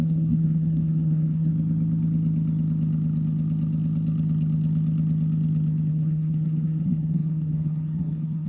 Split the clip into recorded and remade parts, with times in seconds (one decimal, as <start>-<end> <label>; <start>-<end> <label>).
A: 0.0-1.5 remade; 1.5-5.9 recorded; 5.9-8.5 remade